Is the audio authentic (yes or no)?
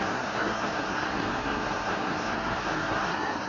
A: no